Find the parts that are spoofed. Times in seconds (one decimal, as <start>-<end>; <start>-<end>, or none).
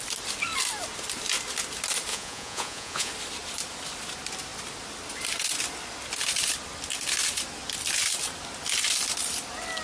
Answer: 2.1-3.1